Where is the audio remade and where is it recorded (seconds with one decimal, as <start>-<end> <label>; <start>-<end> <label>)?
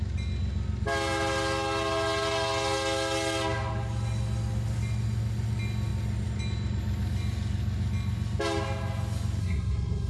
0.0-9.4 recorded; 9.4-10.1 remade